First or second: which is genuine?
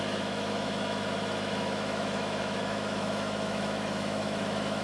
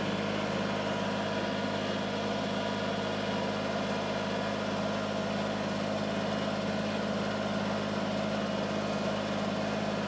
second